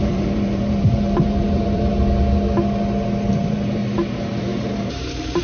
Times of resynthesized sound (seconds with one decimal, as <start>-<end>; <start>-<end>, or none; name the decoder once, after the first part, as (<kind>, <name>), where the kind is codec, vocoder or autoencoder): 0.0-1.9 (vocoder, BigVGAN v2); 3.3-3.8; 4.4-5.4